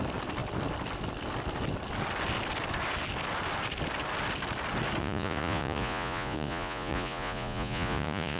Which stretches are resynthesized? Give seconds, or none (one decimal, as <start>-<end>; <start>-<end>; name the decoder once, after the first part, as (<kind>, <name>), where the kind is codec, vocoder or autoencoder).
5.0-8.4 (vocoder, Vocos)